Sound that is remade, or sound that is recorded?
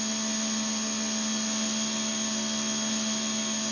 recorded